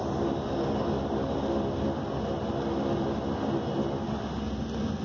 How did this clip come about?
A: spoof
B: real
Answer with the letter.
B